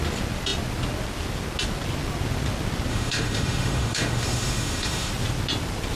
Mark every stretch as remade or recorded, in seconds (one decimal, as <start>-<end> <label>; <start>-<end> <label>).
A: 0.0-2.9 recorded; 2.9-5.1 remade; 5.1-6.0 recorded

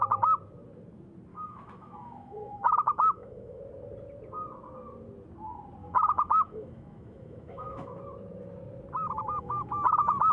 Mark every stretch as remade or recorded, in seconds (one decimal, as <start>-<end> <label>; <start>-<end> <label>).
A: 0.0-1.3 recorded; 1.3-3.6 remade; 3.6-5.8 recorded; 5.8-8.0 remade; 8.0-9.0 recorded; 9.0-9.7 remade; 9.7-10.3 recorded

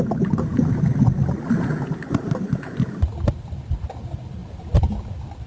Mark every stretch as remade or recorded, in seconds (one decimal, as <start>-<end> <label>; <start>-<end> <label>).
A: 0.0-5.5 recorded

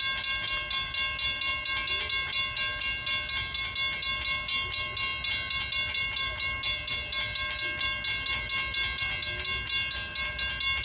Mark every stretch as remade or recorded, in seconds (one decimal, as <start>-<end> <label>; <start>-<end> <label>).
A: 0.0-10.8 recorded